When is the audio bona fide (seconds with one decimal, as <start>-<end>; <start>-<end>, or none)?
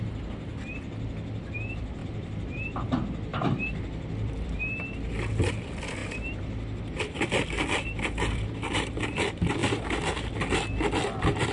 0.0-2.0; 2.6-3.3; 4.6-6.0; 9.0-11.5